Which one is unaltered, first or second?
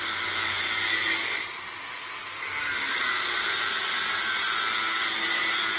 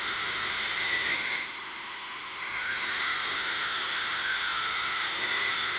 first